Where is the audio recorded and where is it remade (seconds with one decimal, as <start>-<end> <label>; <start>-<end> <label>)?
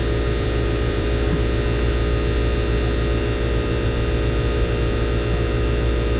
0.0-1.3 remade; 1.3-6.2 recorded